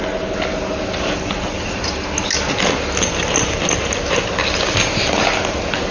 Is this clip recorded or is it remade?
recorded